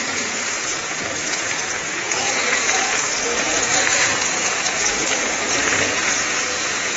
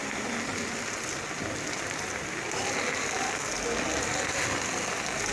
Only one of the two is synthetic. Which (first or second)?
first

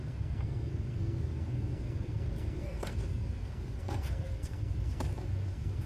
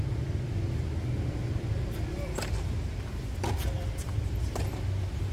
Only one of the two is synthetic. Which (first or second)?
first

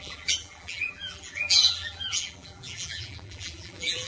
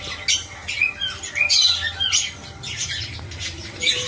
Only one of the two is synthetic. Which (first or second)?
first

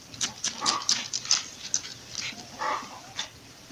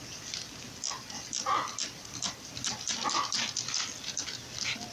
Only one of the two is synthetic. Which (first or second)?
first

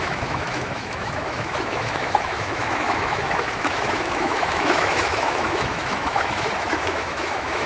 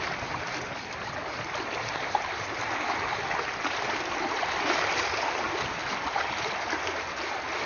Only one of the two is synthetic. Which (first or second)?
first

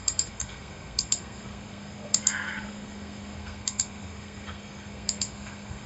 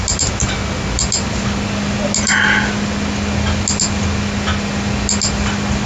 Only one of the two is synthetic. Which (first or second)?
first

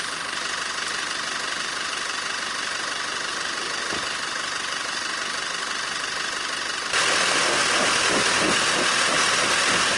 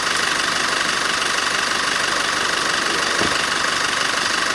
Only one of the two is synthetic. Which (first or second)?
first